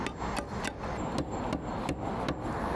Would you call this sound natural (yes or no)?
yes